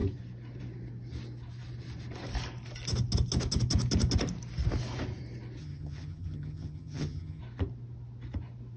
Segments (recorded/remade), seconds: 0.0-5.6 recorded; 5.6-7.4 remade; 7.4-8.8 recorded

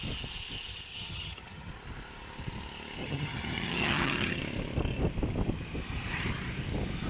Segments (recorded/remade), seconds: 0.0-0.9 recorded; 0.9-1.7 remade; 1.7-3.0 recorded; 3.0-4.4 remade; 4.4-7.1 recorded